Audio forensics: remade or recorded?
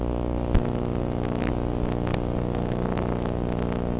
recorded